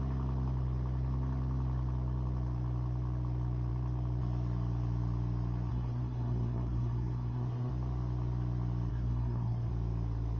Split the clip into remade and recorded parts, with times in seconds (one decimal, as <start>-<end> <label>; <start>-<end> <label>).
0.0-5.7 recorded; 5.7-7.7 remade; 7.7-8.9 recorded; 8.9-9.7 remade; 9.7-10.4 recorded

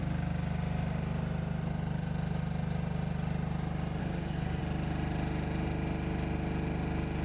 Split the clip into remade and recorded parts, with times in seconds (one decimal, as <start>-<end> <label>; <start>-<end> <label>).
0.0-4.0 recorded; 4.0-4.6 remade; 4.6-7.2 recorded

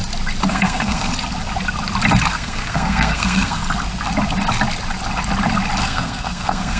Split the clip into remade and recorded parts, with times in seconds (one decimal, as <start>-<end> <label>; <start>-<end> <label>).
0.0-0.5 recorded; 0.5-1.1 remade; 1.1-2.3 recorded; 2.3-3.6 remade; 3.6-5.8 recorded; 5.8-6.8 remade

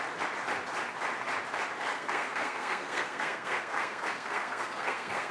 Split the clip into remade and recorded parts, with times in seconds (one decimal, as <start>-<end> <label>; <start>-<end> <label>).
0.0-1.9 recorded; 1.9-5.3 remade

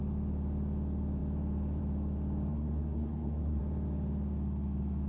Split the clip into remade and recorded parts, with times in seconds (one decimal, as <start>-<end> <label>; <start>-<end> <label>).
0.0-2.5 recorded; 2.5-3.6 remade; 3.6-5.1 recorded